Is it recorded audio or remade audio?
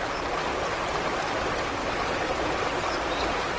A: recorded